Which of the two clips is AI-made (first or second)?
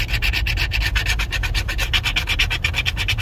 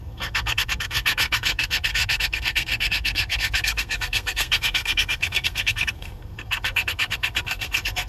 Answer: second